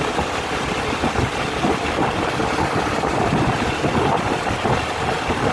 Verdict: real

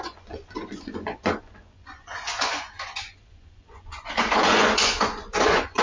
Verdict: fake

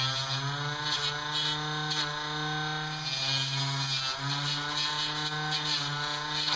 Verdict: real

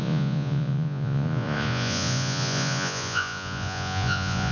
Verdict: fake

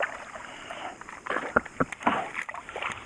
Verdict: real